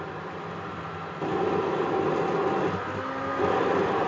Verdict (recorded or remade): recorded